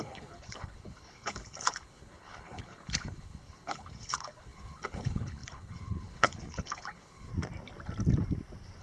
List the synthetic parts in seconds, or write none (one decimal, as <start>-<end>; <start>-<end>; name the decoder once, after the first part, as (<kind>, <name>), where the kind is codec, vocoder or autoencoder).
0.0-7.3 (codec, HILCodec)